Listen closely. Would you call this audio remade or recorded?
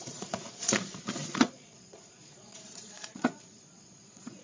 remade